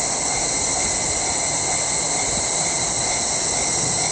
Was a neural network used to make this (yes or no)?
no